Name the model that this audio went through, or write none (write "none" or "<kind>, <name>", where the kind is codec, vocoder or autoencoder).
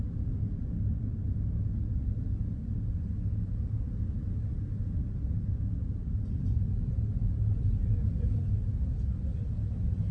none